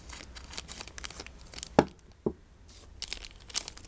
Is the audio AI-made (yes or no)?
no